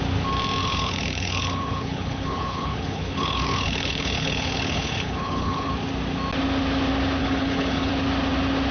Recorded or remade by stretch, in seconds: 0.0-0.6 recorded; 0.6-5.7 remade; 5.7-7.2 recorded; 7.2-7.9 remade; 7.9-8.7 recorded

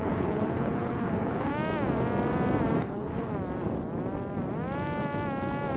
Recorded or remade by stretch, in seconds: 0.0-1.5 remade; 1.5-2.8 recorded; 2.8-3.3 remade; 3.3-5.8 recorded

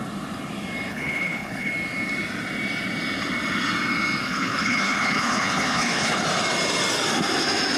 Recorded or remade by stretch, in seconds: 0.0-0.9 recorded; 0.9-1.7 remade; 1.7-4.2 recorded; 4.2-6.2 remade; 6.2-7.8 recorded

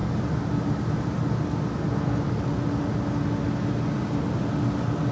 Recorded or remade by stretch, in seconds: 0.0-5.1 recorded

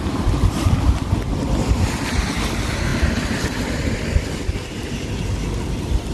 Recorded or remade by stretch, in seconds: 0.0-6.1 recorded

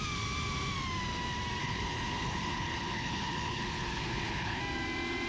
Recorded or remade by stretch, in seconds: 0.0-1.6 recorded; 1.6-4.6 remade; 4.6-5.3 recorded

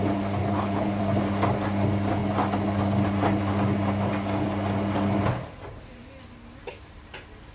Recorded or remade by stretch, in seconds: 0.0-0.4 recorded; 0.4-1.0 remade; 1.0-7.5 recorded

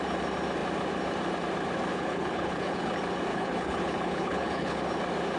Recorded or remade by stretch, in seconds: 0.0-1.9 recorded; 1.9-2.9 remade; 2.9-3.3 recorded; 3.3-4.8 remade; 4.8-5.4 recorded